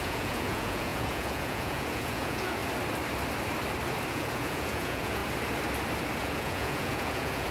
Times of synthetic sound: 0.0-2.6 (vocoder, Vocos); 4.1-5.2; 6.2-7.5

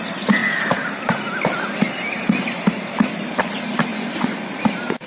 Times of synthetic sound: 3.9-4.5 (vocoder, Vocos)

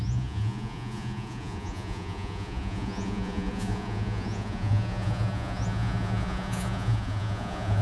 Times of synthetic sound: 0.0-7.8 (vocoder, Vocos)